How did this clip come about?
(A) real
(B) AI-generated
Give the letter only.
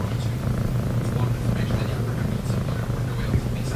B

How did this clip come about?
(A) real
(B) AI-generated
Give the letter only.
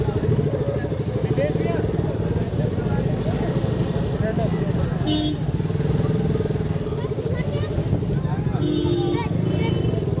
A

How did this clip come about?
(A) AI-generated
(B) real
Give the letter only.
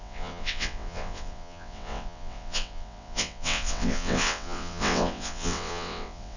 A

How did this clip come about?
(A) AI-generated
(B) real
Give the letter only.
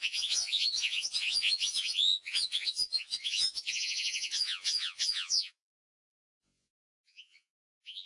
A